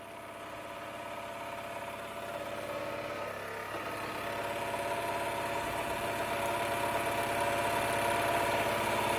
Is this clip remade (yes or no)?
no